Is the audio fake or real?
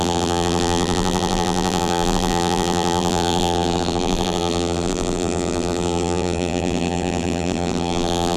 fake